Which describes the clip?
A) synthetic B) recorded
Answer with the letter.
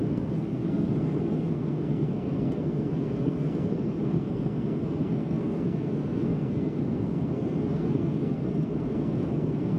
A